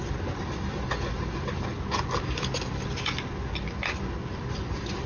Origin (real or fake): real